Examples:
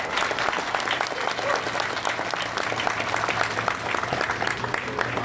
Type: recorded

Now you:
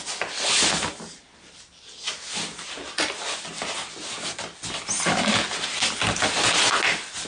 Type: recorded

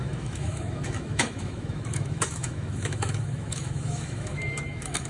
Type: remade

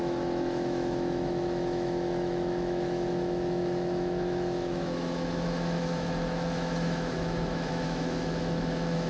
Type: remade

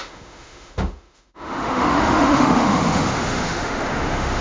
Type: remade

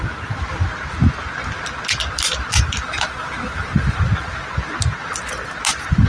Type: recorded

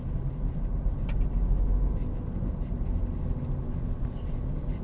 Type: recorded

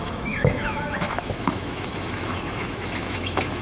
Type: remade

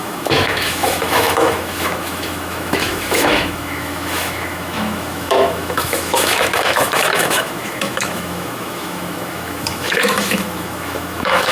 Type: remade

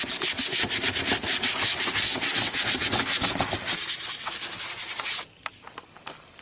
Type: recorded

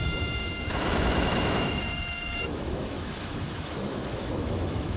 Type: remade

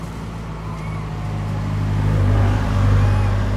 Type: recorded